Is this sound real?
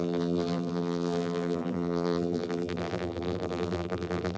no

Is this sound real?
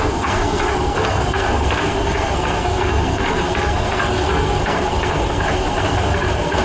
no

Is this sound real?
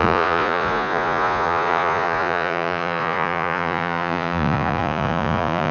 no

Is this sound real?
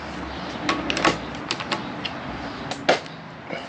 yes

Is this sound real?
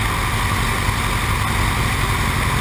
yes